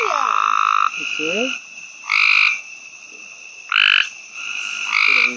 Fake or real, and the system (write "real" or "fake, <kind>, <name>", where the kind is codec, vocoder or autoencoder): real